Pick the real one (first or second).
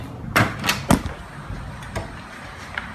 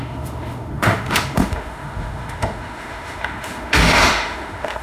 first